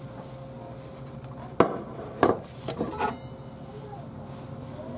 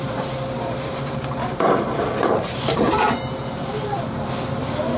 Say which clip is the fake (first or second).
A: second